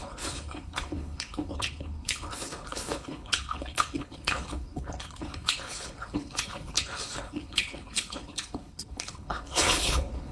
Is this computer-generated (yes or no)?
yes